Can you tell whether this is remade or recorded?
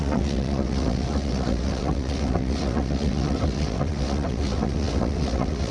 remade